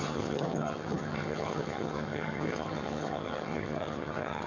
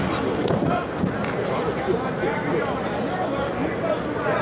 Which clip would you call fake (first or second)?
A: first